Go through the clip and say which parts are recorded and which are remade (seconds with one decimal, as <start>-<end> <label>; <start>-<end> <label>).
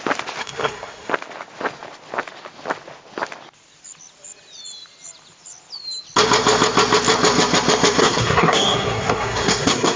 0.0-0.4 recorded; 0.4-1.1 remade; 1.1-8.0 recorded; 8.0-10.0 remade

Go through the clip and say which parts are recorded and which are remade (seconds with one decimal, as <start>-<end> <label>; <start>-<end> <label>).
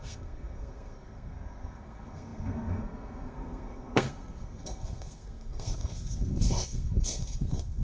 0.0-7.8 remade